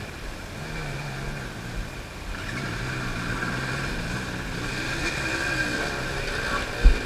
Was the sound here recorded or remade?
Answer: recorded